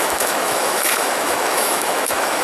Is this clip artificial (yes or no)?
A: yes